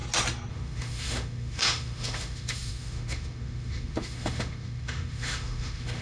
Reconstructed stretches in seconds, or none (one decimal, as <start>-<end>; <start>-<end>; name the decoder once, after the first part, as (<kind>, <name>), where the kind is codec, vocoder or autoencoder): 0.5-6.0 (autoencoder, DAC-VAE)